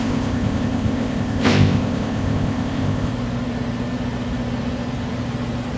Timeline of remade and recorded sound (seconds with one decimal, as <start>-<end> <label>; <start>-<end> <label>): 0.0-3.1 remade; 3.1-5.8 recorded